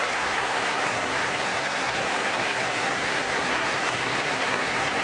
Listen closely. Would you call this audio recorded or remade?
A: remade